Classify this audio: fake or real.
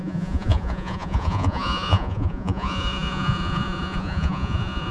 fake